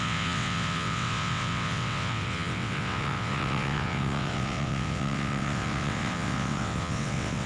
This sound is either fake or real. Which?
fake